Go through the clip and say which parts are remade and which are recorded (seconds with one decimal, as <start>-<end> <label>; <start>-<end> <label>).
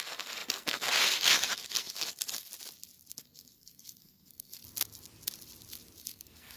0.0-2.5 remade; 2.5-3.1 recorded; 3.1-4.6 remade; 4.6-6.0 recorded; 6.0-6.6 remade